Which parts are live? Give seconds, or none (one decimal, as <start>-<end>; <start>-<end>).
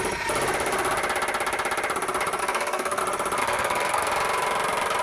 0.0-2.4; 3.0-3.4; 4.1-5.0